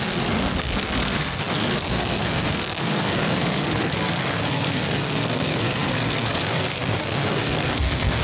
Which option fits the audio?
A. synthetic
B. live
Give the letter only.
A